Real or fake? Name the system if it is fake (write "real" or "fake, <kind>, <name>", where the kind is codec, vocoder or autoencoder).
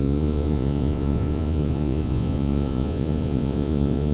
fake, vocoder, Vocos